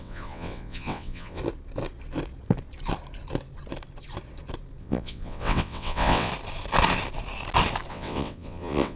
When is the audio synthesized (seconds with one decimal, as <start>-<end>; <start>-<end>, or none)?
0.0-1.4; 4.8-6.3; 7.9-9.0